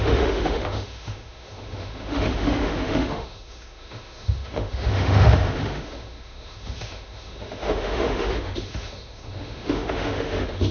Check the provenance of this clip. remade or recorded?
remade